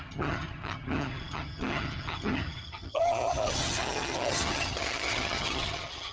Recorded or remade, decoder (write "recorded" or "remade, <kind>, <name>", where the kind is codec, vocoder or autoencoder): remade, vocoder, HiFi-GAN